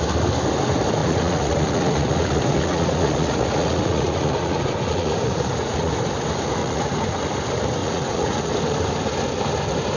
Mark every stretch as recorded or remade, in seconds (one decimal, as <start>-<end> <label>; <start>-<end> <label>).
0.0-1.0 recorded; 1.0-5.9 remade; 5.9-6.6 recorded; 6.6-7.2 remade; 7.2-7.8 recorded; 7.8-8.5 remade; 8.5-10.0 recorded